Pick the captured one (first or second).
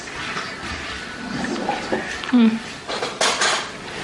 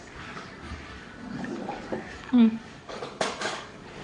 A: first